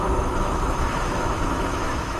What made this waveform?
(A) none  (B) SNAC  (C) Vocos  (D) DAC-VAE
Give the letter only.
D